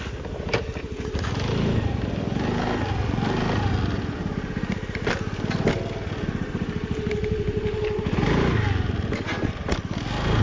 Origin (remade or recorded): recorded